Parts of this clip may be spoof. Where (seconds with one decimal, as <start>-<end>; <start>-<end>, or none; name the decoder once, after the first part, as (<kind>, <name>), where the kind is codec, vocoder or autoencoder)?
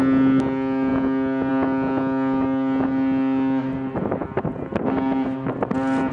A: none